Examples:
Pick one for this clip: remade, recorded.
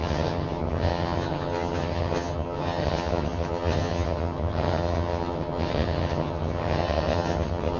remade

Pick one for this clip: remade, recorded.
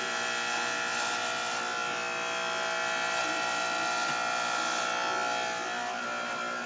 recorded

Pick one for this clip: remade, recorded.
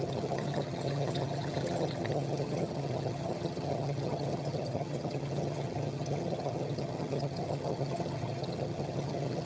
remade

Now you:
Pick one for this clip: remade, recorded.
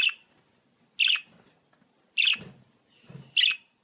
recorded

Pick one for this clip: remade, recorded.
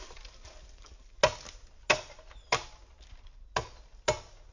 recorded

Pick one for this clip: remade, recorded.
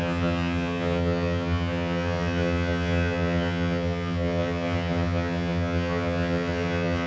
remade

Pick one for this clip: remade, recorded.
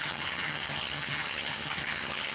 remade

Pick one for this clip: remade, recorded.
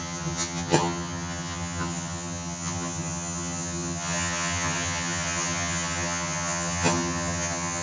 remade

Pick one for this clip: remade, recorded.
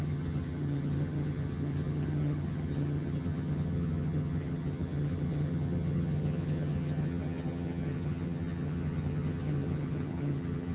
remade